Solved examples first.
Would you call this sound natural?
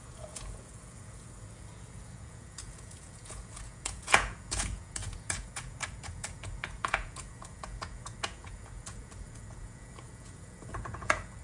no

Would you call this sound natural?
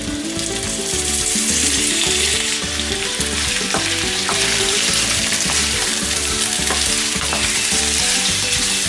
no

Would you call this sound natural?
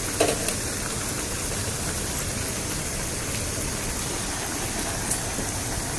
yes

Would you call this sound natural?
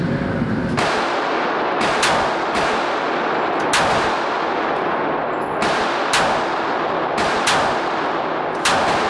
yes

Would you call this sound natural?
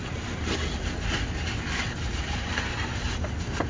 yes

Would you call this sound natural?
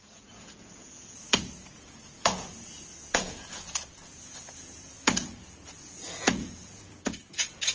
no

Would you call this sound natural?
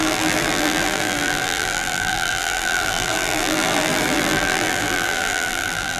no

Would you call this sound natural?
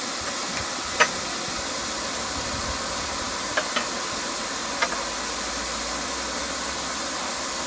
yes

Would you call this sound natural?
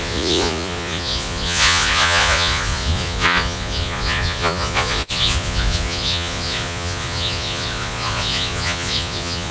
no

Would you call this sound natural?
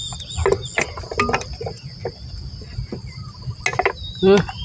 yes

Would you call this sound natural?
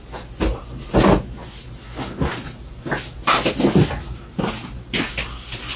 yes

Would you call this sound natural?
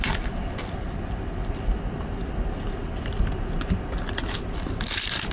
yes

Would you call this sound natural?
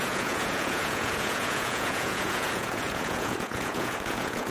no